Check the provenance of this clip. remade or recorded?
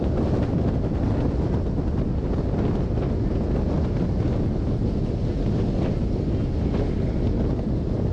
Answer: recorded